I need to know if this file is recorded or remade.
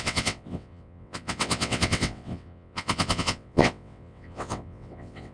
remade